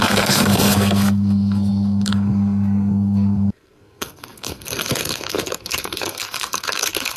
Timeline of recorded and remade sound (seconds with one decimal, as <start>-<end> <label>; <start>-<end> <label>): 0.0-7.2 remade